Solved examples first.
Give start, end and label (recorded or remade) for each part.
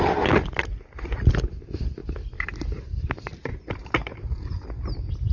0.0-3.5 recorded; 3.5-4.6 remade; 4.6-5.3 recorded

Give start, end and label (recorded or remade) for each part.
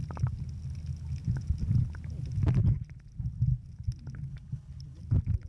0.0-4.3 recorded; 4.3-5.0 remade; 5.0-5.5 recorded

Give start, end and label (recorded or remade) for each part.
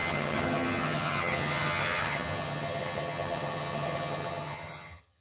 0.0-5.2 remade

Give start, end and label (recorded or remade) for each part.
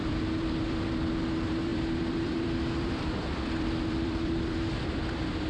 0.0-5.5 remade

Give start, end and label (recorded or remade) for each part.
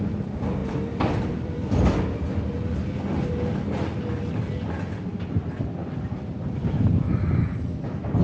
0.0-0.6 recorded; 0.6-2.0 remade; 2.0-5.8 recorded; 5.8-6.9 remade; 6.9-8.2 recorded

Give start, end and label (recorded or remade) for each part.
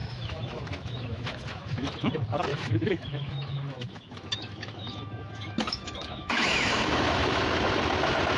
0.0-2.1 remade; 2.1-2.5 recorded; 2.5-7.4 remade; 7.4-8.4 recorded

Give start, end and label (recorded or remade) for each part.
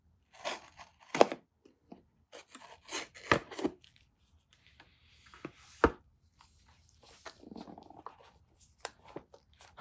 0.0-5.0 remade; 5.0-7.0 recorded; 7.0-9.8 remade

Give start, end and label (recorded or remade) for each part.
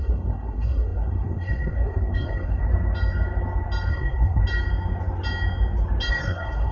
0.0-2.7 remade; 2.7-3.9 recorded; 3.9-4.4 remade; 4.4-6.1 recorded; 6.1-6.7 remade